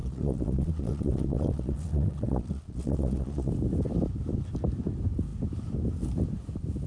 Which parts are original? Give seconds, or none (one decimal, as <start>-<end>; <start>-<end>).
3.5-6.9